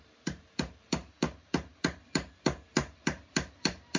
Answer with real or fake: fake